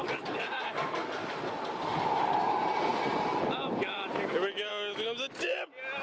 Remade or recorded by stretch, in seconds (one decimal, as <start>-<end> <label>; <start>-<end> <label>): 0.0-2.3 remade; 2.3-2.9 recorded; 2.9-4.7 remade; 4.7-6.0 recorded